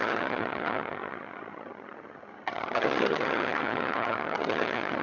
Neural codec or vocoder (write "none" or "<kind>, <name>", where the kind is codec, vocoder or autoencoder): vocoder, HiFi-GAN